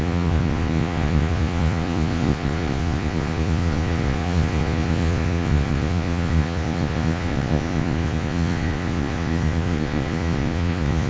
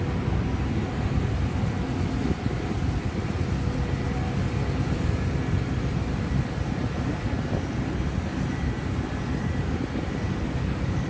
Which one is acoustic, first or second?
second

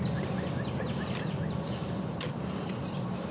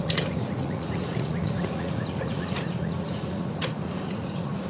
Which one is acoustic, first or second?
first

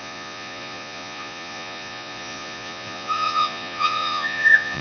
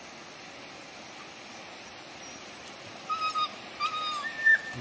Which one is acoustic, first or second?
second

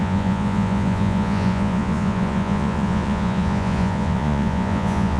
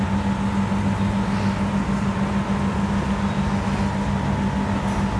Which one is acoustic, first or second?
second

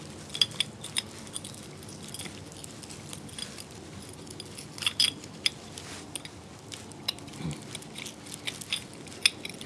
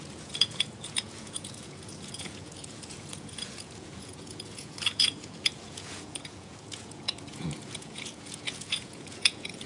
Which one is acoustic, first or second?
first